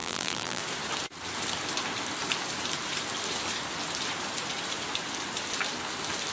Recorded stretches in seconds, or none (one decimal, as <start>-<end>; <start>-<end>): 0.6-6.3